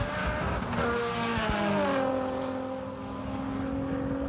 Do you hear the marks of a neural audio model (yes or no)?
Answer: no